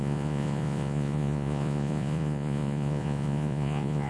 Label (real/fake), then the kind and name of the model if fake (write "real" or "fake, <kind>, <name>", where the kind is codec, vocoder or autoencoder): fake, vocoder, Vocos